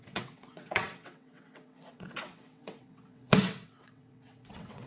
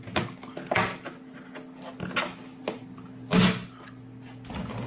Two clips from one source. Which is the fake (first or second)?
first